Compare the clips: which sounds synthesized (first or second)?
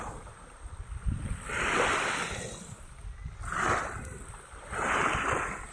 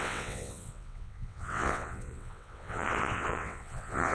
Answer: second